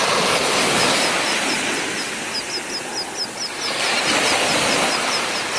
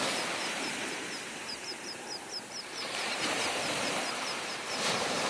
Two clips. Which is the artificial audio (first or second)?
second